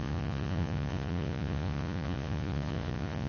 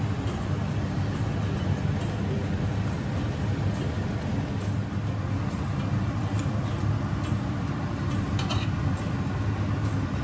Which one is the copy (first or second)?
first